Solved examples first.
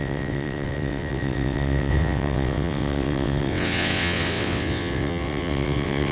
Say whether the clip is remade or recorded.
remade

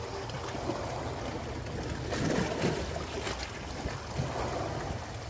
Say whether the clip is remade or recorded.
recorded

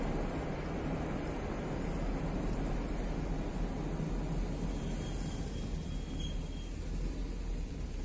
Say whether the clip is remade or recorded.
recorded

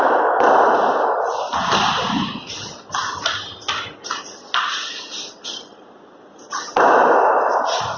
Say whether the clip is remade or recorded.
recorded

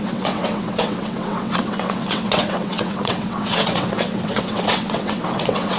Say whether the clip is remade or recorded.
remade